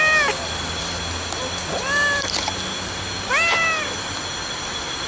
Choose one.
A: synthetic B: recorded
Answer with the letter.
B